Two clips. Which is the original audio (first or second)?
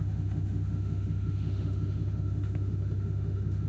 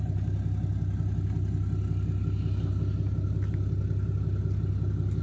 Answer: second